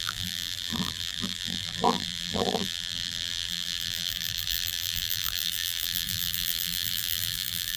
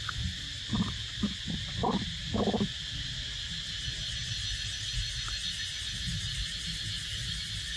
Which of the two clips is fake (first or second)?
first